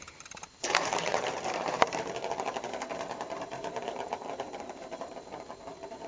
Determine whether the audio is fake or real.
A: fake